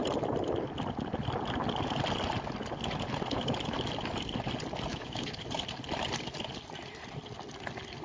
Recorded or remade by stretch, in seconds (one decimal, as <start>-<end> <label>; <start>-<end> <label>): 0.0-4.9 recorded; 4.9-5.4 remade; 5.4-8.0 recorded